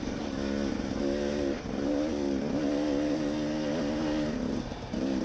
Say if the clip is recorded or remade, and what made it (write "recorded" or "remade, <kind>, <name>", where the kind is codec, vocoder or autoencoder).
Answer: recorded